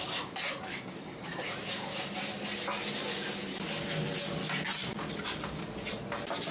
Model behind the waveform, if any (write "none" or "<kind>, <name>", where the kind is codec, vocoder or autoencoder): none